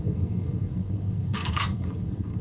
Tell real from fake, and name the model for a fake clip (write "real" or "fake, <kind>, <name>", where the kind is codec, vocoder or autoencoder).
fake, codec, SNAC